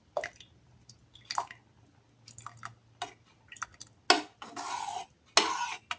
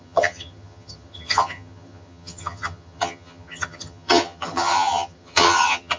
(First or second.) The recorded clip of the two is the first